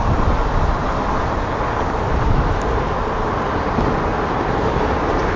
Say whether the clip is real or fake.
real